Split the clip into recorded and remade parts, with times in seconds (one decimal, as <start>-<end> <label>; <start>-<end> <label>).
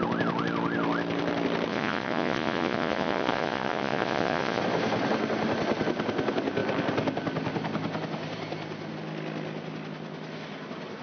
0.0-1.7 recorded; 1.7-4.6 remade; 4.6-11.0 recorded